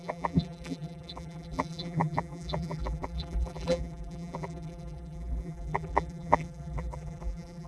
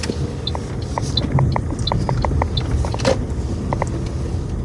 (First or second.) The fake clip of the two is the first